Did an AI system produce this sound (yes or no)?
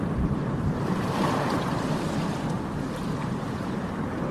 yes